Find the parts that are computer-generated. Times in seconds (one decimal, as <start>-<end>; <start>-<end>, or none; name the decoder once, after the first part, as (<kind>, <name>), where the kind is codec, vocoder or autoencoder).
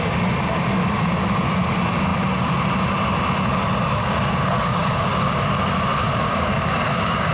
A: 4.0-5.4 (codec, DAC); 6.3-7.3